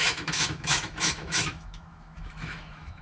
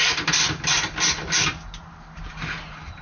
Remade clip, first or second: first